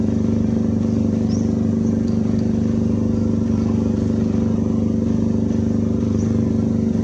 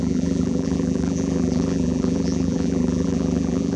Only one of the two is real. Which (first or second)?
first